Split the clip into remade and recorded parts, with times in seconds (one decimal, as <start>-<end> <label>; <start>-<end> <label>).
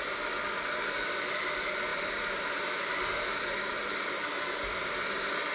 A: 0.0-1.9 recorded; 1.9-5.5 remade